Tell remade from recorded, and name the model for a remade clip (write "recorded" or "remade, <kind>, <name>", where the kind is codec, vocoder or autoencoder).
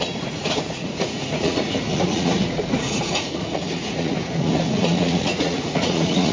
remade, vocoder, Vocos